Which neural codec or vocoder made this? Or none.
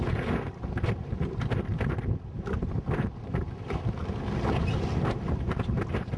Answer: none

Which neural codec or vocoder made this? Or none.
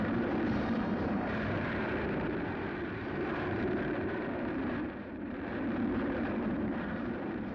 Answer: vocoder, BigVGAN v2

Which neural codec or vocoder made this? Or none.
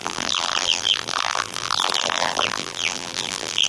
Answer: vocoder, BigVGAN v2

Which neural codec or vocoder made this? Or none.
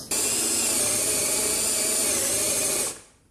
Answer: none